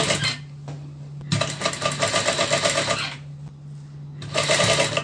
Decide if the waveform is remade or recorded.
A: recorded